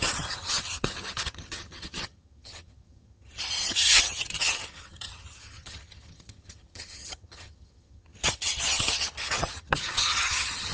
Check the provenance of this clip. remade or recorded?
remade